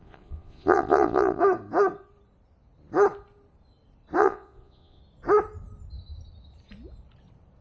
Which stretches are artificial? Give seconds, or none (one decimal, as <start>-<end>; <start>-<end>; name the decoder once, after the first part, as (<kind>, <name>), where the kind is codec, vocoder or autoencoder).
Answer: 0.0-1.4 (vocoder, Vocos); 4.2-5.0

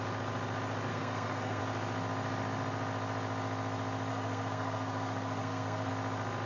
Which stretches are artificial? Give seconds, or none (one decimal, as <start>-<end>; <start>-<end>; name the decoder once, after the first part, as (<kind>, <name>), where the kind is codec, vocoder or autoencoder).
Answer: 0.9-1.6 (codec, SNAC); 4.1-5.9

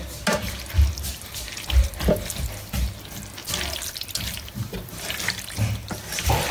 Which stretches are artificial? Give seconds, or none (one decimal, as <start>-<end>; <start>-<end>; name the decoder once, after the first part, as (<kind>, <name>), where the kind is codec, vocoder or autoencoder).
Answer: 3.4-6.5 (vocoder, BigVGAN v2)

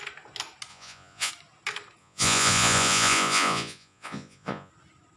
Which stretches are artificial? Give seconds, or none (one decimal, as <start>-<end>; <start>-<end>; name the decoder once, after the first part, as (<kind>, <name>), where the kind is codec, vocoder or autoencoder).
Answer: 0.7-1.3 (vocoder, Vocos); 2.0-4.7

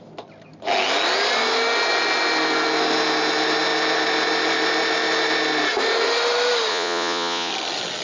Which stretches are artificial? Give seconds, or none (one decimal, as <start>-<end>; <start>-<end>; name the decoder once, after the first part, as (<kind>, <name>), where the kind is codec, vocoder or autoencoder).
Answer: 6.7-7.5 (vocoder, Vocos)

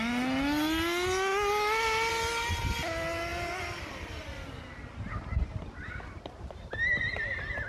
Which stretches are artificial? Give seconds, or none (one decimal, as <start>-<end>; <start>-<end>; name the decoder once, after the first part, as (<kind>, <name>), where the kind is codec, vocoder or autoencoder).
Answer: none

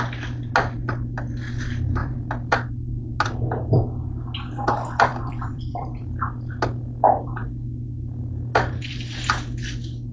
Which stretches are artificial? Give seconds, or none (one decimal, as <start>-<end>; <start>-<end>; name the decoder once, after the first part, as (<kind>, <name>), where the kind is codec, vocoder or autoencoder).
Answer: 2.0-2.7 (vocoder, BigVGAN v2); 5.1-6.0